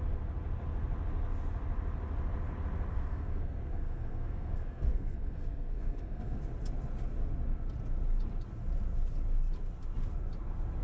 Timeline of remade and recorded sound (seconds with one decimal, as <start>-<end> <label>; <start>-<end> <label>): 0.0-2.9 recorded; 2.9-6.4 remade; 6.4-10.8 recorded